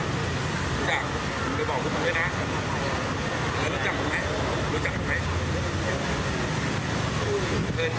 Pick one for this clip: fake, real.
real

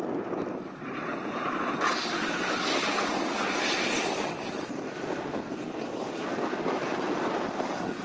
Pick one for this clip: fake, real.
real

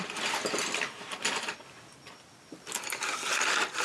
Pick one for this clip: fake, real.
real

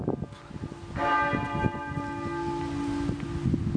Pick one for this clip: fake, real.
real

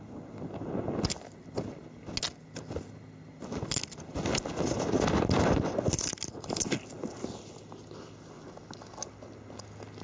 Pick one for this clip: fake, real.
real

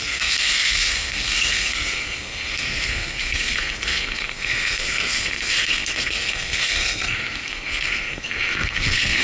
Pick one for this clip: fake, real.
fake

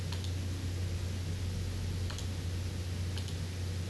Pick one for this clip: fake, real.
real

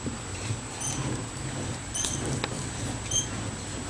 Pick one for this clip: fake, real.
real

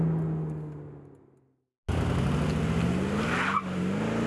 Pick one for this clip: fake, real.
real